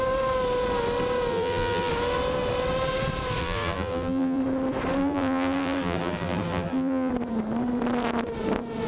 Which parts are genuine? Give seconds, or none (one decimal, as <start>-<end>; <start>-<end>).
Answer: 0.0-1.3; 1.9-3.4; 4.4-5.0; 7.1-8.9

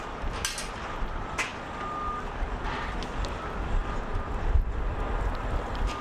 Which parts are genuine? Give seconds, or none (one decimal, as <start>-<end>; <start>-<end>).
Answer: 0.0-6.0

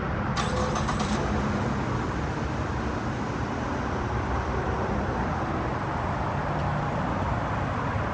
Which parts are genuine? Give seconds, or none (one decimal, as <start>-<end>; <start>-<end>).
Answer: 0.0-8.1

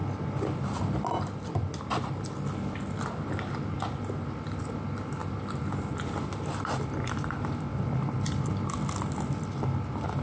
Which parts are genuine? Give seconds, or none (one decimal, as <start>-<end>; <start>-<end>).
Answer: 1.8-5.2; 7.4-10.2

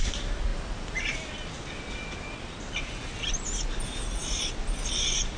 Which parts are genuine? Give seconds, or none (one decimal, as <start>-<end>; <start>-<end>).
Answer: 0.0-0.5; 1.3-5.4

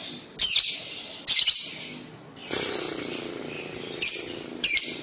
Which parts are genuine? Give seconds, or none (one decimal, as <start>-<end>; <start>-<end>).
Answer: 0.0-5.0

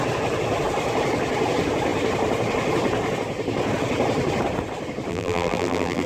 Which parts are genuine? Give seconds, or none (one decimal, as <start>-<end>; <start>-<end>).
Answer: 0.0-5.1